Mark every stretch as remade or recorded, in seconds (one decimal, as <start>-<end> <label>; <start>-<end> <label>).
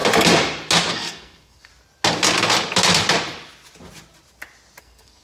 0.0-0.9 recorded; 0.9-1.7 remade; 1.7-4.8 recorded; 4.8-5.2 remade